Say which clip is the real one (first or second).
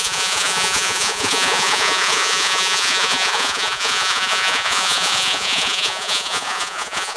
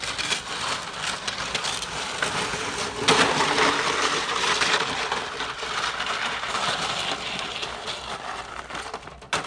second